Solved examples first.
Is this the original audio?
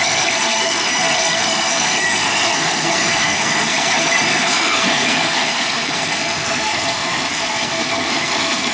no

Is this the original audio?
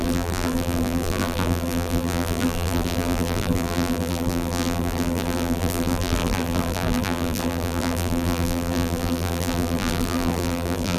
no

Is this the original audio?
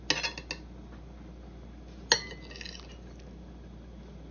yes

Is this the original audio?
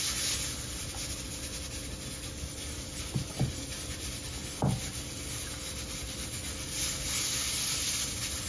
yes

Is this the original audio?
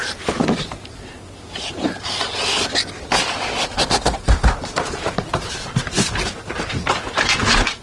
yes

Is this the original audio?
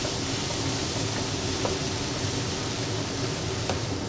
yes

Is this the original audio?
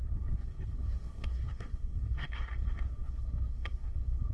no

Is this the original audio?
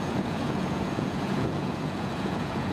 no